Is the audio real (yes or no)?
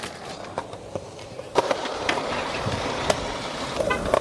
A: no